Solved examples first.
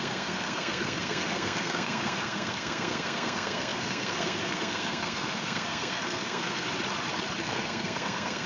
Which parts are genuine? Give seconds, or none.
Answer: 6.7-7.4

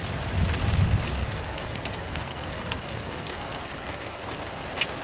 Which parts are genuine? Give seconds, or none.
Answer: 0.0-1.2; 4.2-5.0

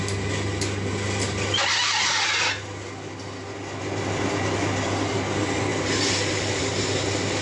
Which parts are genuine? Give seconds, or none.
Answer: 0.0-7.4